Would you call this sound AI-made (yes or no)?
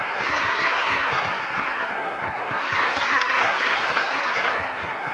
yes